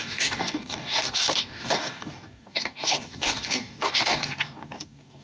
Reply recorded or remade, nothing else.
remade